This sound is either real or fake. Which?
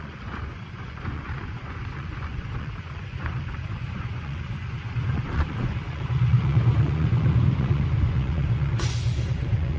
fake